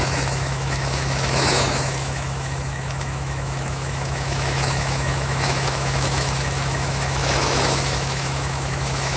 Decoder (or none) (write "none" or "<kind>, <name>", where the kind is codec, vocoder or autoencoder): autoencoder, DAC-VAE